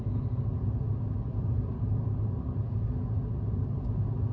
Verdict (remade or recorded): recorded